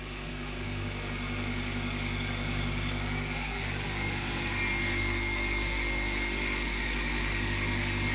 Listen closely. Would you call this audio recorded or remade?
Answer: remade